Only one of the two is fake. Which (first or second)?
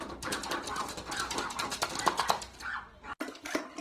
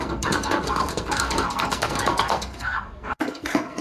second